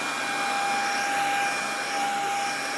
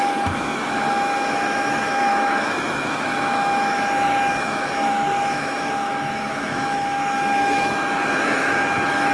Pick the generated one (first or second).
second